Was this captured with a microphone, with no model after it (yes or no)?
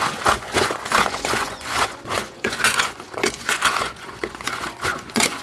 no